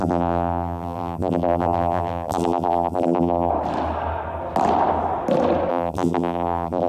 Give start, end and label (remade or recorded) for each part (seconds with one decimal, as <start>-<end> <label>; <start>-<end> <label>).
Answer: 0.0-3.5 remade; 3.5-5.7 recorded; 5.7-6.9 remade